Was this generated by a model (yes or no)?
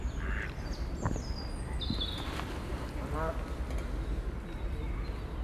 no